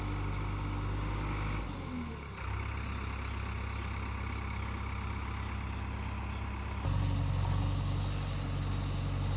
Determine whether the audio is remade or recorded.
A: recorded